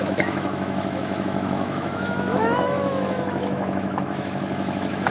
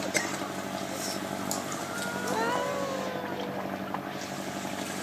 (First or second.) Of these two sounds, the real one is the second